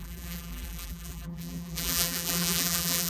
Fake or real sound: fake